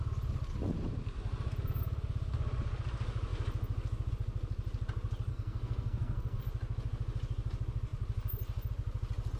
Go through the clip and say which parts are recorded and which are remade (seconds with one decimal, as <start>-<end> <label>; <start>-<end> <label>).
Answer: 0.0-5.3 recorded; 5.3-6.4 remade; 6.4-9.4 recorded